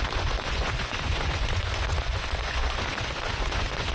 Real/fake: fake